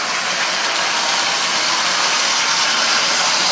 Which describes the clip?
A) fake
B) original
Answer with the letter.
B